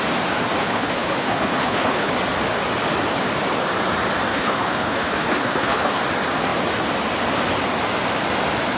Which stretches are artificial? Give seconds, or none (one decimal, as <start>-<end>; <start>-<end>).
0.6-2.1; 4.3-6.0